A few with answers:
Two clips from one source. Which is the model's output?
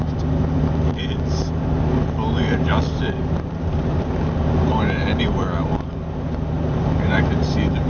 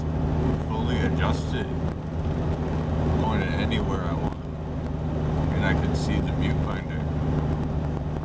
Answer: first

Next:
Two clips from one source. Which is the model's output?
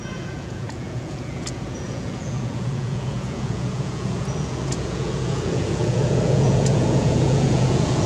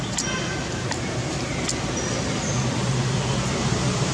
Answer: first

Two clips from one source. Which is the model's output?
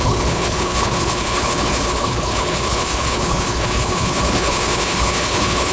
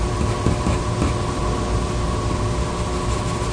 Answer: first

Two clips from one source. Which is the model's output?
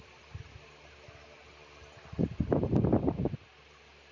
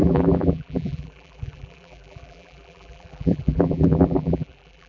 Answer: second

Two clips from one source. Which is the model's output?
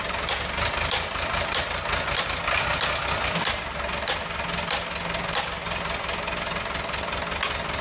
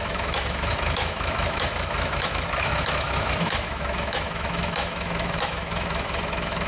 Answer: second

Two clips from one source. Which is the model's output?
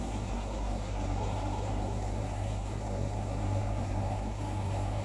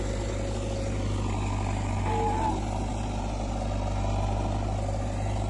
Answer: first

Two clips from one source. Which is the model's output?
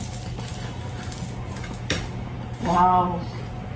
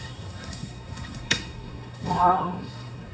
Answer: second